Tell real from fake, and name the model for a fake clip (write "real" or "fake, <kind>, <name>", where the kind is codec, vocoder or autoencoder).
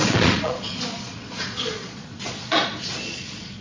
fake, vocoder, Vocos